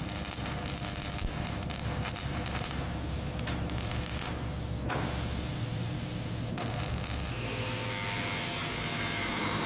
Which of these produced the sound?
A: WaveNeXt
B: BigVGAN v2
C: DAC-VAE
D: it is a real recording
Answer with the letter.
D